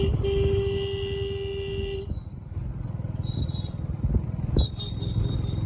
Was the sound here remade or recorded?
recorded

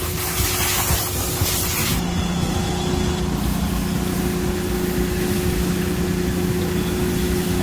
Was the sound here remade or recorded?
recorded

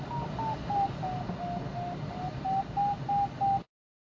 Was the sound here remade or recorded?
recorded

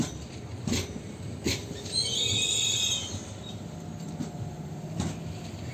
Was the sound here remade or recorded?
recorded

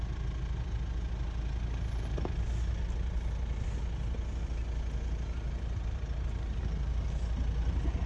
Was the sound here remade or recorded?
recorded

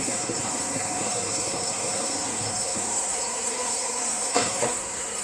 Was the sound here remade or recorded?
remade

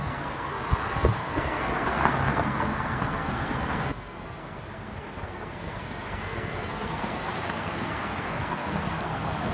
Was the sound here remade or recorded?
remade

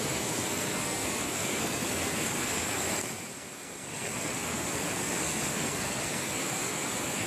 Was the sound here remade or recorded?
remade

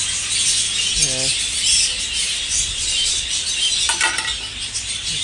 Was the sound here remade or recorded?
recorded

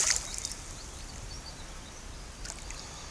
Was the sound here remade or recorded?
recorded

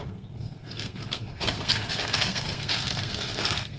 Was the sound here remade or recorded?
remade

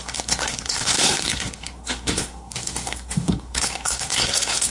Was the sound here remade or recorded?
remade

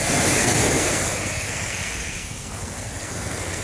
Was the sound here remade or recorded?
remade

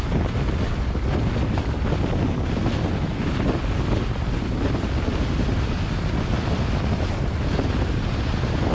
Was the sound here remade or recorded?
recorded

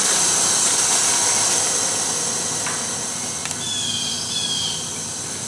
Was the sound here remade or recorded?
recorded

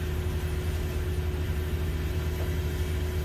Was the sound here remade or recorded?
recorded